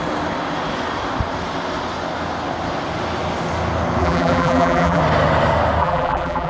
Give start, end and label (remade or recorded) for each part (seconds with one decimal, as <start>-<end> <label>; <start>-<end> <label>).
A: 0.0-4.0 recorded; 4.0-5.0 remade; 5.0-5.8 recorded; 5.8-6.5 remade